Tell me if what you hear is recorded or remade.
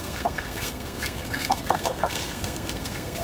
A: remade